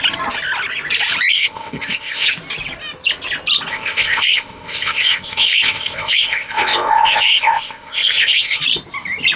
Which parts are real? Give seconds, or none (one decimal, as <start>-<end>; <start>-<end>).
0.0-1.3; 2.3-3.7; 8.6-9.4

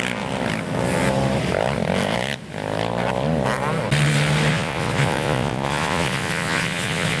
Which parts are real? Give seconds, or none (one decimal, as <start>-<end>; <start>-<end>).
0.0-4.5

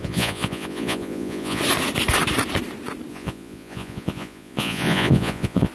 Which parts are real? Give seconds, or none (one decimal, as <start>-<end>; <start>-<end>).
1.6-3.1

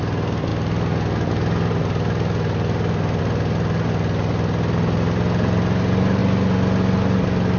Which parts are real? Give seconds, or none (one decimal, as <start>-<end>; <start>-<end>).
0.0-7.6

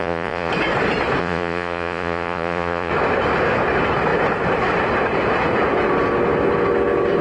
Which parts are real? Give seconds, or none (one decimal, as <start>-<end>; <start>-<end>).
0.5-1.2; 2.9-7.2